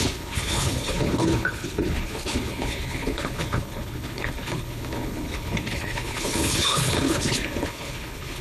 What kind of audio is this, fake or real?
fake